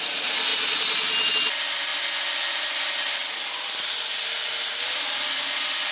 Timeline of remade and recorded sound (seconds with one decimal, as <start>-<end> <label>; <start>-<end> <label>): 0.0-5.9 recorded